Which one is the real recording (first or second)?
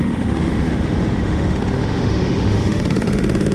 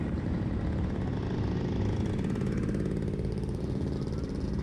second